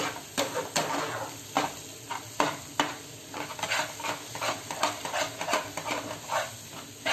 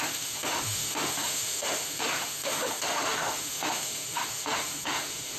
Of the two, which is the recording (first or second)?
first